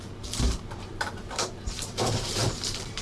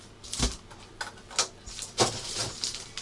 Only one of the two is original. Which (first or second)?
second